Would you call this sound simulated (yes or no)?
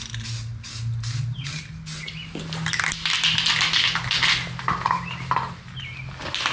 no